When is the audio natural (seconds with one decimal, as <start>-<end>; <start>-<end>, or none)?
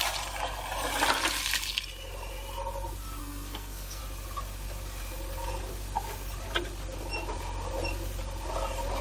0.0-3.2; 4.0-9.0